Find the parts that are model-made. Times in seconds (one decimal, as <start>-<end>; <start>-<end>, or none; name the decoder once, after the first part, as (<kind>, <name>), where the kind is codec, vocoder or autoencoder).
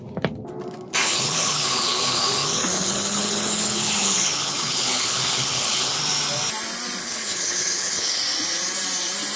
1.0-6.0 (codec, HILCodec); 7.0-8.2